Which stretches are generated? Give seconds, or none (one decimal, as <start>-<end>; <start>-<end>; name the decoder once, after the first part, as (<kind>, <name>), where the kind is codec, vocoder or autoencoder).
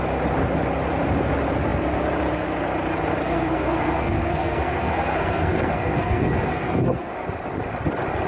3.2-7.3 (codec, SNAC)